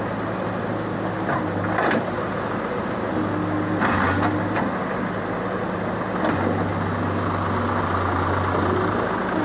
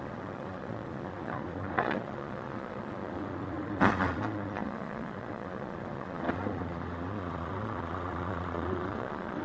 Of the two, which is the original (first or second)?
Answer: first